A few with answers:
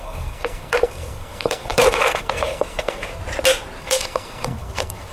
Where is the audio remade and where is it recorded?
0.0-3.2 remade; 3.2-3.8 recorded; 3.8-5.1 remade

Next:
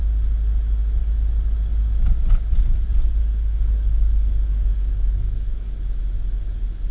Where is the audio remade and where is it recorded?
0.0-3.2 recorded; 3.2-6.0 remade; 6.0-6.9 recorded

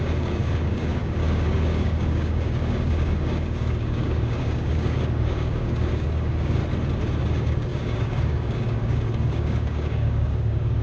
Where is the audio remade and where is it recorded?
0.0-6.6 remade; 6.6-7.3 recorded; 7.3-10.8 remade